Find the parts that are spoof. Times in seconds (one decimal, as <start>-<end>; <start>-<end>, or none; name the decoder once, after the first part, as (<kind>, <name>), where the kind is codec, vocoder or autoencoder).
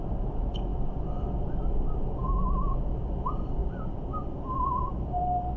none